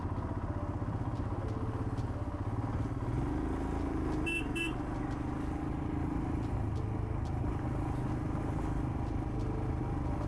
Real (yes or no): yes